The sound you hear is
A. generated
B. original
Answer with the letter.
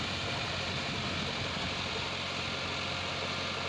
B